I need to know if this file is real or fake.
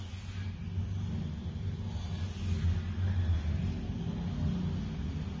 real